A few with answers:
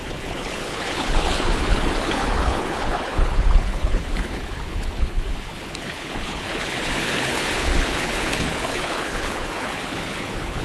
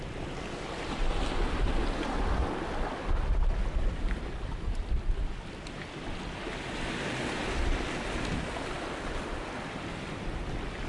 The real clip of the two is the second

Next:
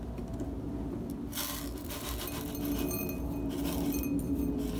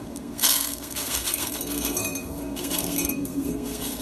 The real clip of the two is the first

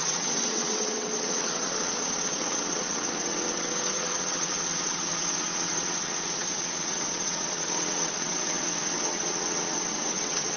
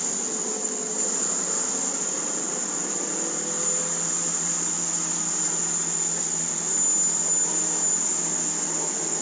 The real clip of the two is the second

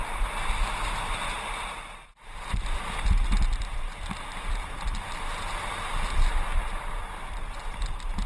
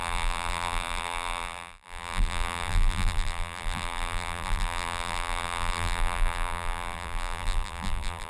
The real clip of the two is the first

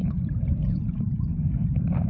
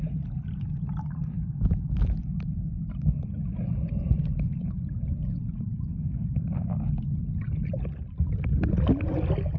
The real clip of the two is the second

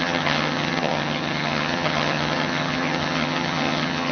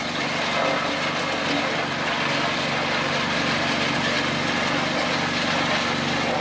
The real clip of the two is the second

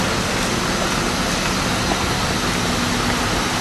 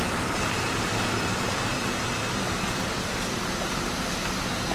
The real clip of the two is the first